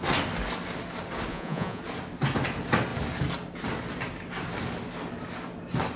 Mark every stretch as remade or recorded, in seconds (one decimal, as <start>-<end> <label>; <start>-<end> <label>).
0.0-1.3 recorded; 1.3-1.8 remade; 1.8-6.0 recorded